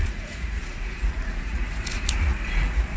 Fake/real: fake